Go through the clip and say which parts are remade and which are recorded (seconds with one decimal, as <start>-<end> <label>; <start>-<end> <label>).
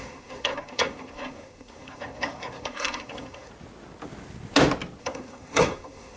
0.0-3.5 remade; 3.5-5.0 recorded; 5.0-6.2 remade